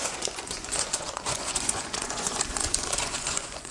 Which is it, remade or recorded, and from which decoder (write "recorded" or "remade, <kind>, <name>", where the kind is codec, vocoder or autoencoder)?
remade, vocoder, Vocos